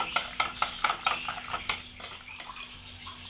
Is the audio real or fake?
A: real